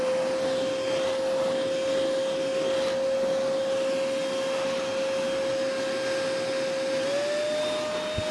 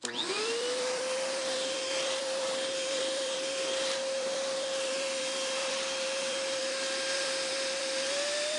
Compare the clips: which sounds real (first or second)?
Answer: first